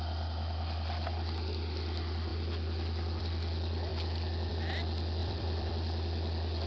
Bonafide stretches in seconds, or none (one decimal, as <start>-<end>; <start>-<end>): 0.0-5.2; 5.7-6.7